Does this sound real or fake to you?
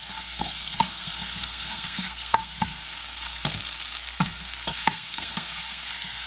fake